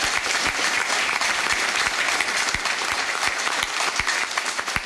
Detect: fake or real fake